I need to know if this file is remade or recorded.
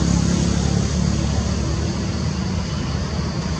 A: recorded